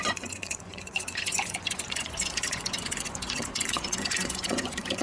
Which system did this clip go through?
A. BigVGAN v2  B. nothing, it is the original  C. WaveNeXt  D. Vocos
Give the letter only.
D